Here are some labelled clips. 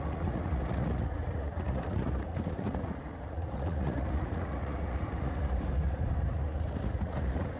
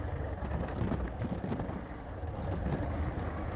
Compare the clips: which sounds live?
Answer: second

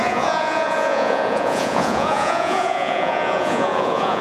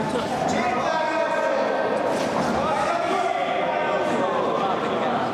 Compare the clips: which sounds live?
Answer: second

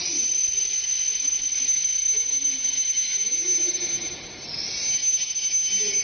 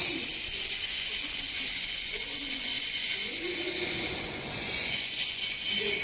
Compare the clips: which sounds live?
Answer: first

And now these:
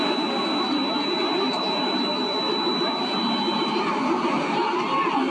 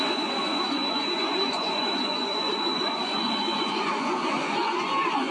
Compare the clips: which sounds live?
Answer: first